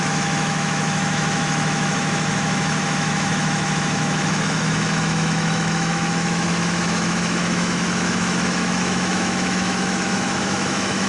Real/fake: fake